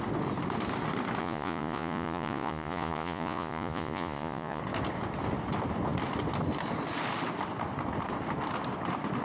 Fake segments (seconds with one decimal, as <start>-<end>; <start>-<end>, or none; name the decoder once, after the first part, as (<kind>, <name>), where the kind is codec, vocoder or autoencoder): 1.2-4.6 (vocoder, Vocos)